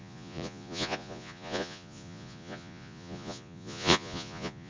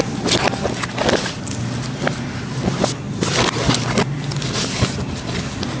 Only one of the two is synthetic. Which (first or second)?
first